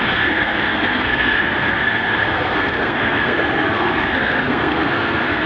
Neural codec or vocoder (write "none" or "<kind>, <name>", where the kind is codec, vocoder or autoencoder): codec, SNAC